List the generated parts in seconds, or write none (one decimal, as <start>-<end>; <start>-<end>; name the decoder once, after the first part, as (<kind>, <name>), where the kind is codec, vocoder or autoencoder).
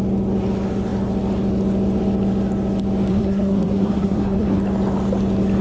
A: 3.1-4.6 (codec, SNAC)